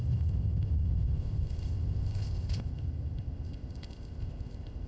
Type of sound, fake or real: fake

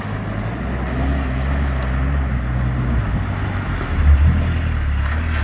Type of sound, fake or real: real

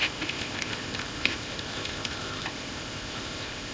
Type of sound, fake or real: fake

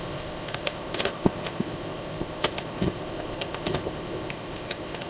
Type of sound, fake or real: fake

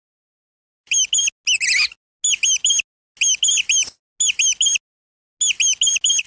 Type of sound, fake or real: real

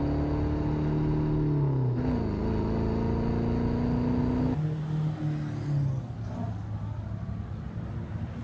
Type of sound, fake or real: real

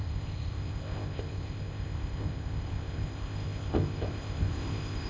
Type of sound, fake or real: fake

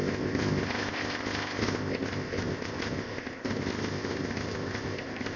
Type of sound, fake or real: fake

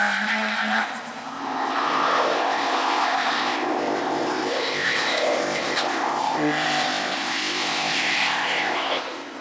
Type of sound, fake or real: fake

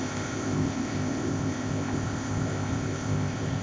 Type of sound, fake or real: fake